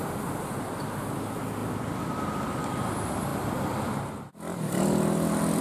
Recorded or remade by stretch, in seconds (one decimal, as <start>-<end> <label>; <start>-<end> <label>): 0.0-1.6 recorded; 1.6-2.6 remade; 2.6-3.3 recorded; 3.3-4.3 remade; 4.3-5.6 recorded

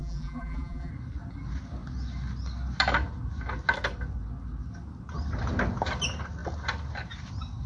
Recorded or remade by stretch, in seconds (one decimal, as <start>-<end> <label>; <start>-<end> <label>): 0.0-0.9 remade; 0.9-7.7 recorded

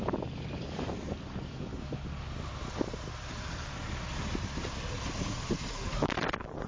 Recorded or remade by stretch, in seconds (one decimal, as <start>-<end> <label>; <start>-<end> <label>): 0.0-1.7 remade; 1.7-2.4 recorded; 2.4-6.7 remade

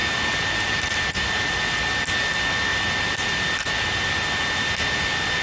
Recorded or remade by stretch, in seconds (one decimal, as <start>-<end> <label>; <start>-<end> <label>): 0.0-1.3 remade; 1.3-5.4 recorded

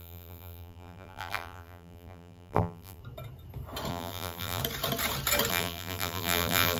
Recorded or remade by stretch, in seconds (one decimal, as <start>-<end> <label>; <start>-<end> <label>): 0.0-3.0 remade; 3.0-3.9 recorded; 3.9-4.6 remade; 4.6-5.5 recorded; 5.5-6.8 remade